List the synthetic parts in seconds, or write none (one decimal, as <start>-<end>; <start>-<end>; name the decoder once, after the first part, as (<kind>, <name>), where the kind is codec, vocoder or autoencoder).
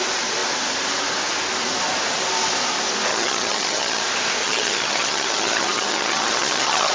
3.1-4.0 (vocoder, HiFi-GAN); 4.4-6.9